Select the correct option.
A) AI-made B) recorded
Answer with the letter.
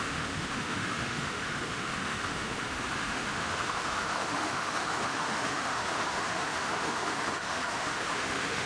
A